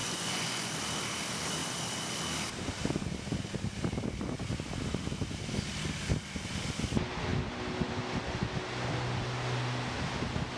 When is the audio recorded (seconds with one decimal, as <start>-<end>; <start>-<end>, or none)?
0.7-10.6